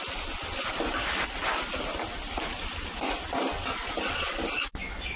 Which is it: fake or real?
real